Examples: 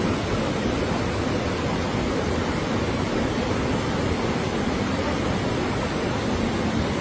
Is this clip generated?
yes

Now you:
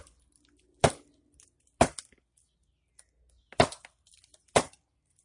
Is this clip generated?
no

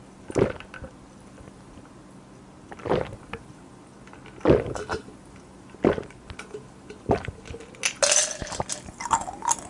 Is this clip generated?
no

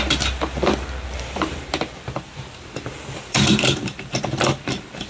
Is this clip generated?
yes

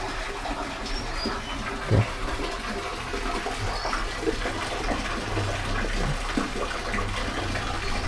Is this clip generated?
no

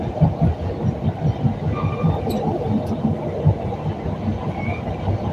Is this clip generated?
no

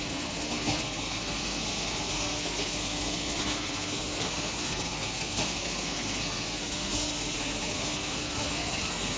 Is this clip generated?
yes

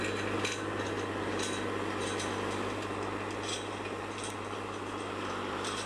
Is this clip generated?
no